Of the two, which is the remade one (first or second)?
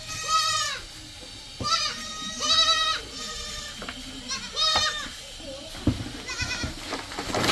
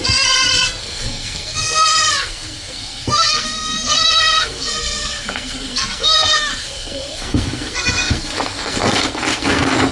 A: second